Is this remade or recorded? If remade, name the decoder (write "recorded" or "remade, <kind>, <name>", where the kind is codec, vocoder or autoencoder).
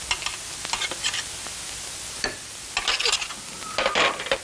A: recorded